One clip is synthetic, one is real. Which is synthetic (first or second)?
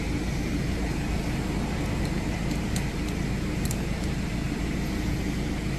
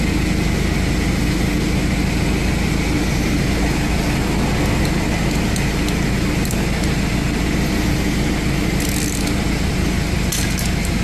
first